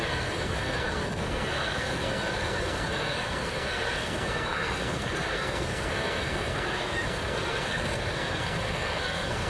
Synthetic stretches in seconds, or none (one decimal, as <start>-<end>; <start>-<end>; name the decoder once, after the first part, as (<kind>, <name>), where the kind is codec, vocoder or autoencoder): 0.0-9.5 (codec, SNAC)